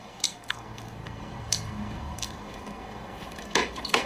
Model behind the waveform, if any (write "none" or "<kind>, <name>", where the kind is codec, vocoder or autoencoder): codec, SNAC